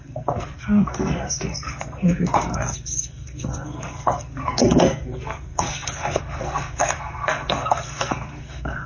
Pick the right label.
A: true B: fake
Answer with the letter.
B